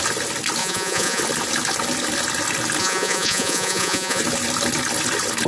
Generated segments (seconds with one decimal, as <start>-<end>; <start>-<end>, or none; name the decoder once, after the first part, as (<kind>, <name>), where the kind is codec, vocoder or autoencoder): 0.6-1.2 (vocoder, Vocos); 2.8-4.2